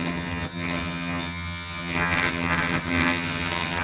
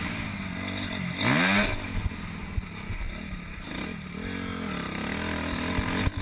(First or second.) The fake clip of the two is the first